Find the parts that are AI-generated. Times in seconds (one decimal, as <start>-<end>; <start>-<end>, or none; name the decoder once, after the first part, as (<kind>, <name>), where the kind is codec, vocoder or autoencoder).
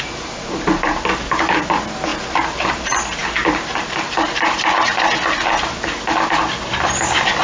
none